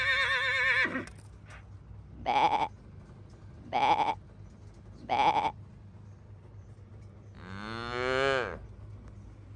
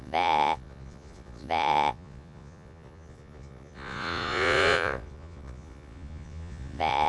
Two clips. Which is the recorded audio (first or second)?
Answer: first